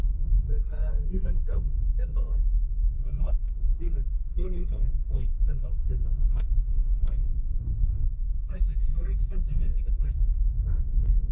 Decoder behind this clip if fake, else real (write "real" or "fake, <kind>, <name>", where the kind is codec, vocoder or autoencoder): fake, codec, SNAC